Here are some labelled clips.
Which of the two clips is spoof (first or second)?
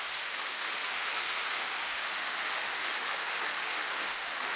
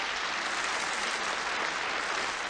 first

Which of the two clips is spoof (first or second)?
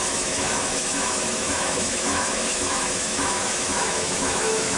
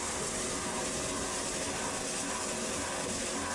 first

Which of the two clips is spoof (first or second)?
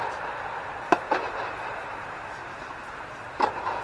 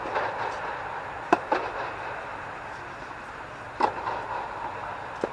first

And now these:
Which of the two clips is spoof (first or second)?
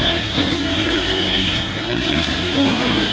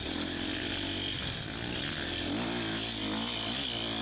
first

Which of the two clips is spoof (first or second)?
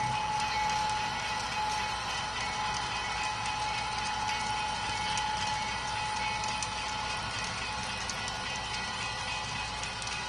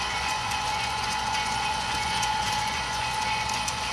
second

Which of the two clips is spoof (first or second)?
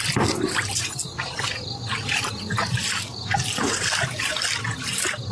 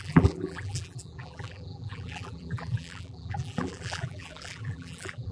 second